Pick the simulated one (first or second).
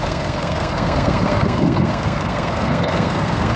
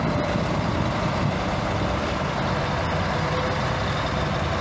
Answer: first